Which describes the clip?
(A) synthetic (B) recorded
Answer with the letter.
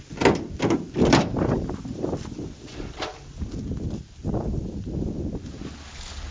B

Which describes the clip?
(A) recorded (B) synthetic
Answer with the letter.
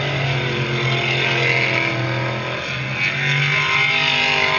A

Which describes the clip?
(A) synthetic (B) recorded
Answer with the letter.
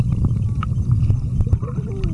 B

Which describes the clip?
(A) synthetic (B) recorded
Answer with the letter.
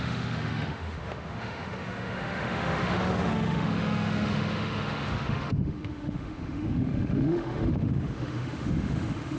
A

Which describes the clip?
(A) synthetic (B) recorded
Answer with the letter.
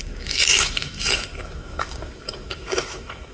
A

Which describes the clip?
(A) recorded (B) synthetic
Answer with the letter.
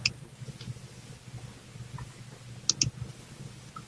A